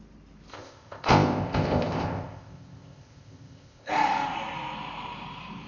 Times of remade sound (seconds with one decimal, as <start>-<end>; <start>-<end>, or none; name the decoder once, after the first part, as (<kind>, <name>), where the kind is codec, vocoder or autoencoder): 0.5-3.9 (codec, ZipCodec)